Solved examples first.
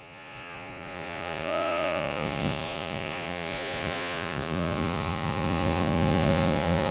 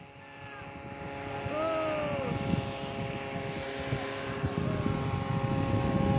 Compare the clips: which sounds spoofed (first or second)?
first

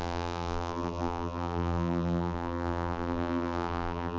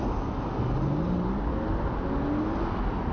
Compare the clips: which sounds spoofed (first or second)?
first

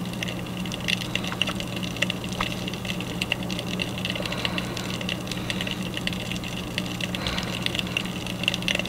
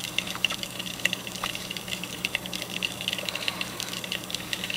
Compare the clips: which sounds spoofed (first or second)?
second